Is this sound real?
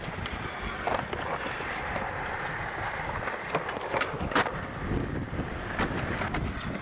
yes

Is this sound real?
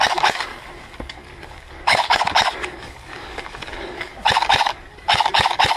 no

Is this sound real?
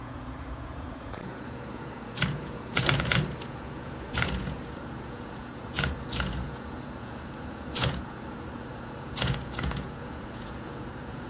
no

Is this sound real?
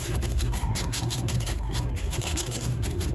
no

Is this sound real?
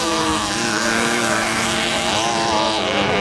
no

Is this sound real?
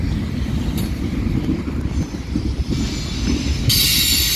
yes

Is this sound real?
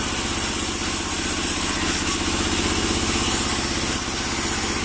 yes